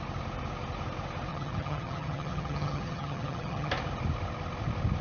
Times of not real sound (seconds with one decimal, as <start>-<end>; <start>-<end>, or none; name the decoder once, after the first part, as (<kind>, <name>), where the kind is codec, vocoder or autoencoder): 1.3-3.7 (vocoder, HiFi-GAN)